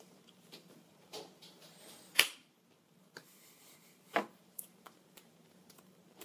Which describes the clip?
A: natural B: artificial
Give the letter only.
B